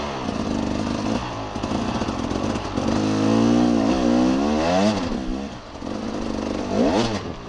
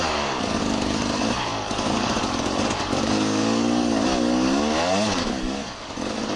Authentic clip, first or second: first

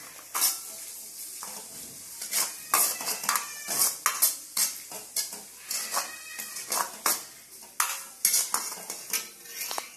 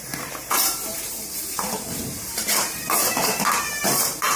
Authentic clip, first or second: first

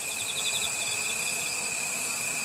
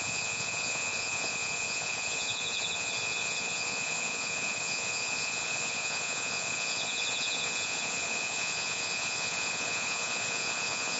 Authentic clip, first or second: first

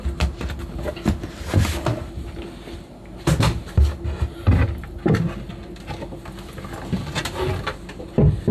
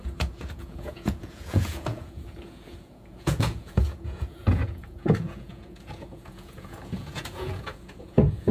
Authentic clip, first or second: first